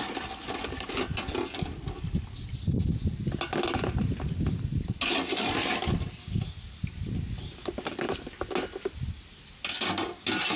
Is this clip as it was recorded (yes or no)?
yes